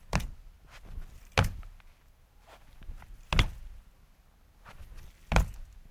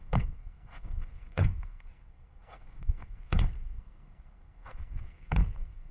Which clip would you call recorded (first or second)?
first